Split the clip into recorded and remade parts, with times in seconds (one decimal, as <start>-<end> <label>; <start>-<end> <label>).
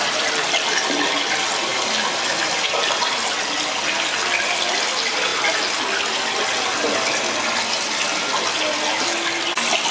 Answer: 0.0-1.7 recorded; 1.7-3.0 remade; 3.0-9.9 recorded